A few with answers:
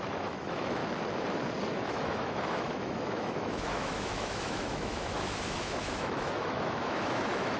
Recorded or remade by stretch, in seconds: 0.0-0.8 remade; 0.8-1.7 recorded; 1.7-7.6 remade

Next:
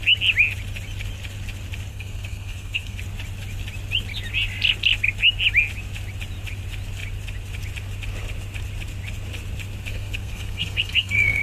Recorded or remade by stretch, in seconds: 0.0-1.9 recorded; 1.9-3.0 remade; 3.0-9.9 recorded; 9.9-11.4 remade

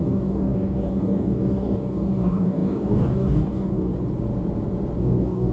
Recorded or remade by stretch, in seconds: 0.0-3.9 remade; 3.9-5.0 recorded; 5.0-5.5 remade

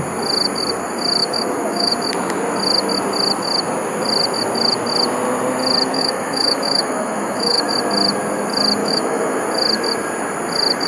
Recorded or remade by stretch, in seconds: 0.0-1.2 recorded; 1.2-1.9 remade; 1.9-5.9 recorded; 5.9-7.7 remade; 7.7-8.8 recorded; 8.8-9.4 remade; 9.4-10.9 recorded

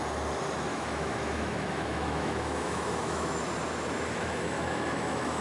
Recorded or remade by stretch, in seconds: 0.0-0.7 recorded; 0.7-3.4 remade; 3.4-4.1 recorded; 4.1-5.4 remade

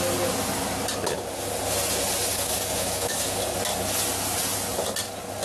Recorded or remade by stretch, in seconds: 0.0-2.3 recorded; 2.3-3.4 remade; 3.4-5.4 recorded

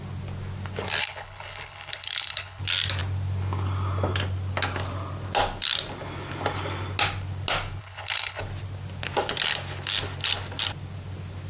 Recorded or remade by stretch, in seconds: 0.0-1.0 recorded; 1.0-2.6 remade; 2.6-7.8 recorded; 7.8-8.4 remade; 8.4-11.5 recorded

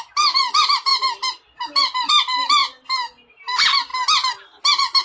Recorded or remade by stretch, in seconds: 0.0-2.6 remade; 2.6-3.3 recorded; 3.3-3.9 remade; 3.9-4.6 recorded; 4.6-5.0 remade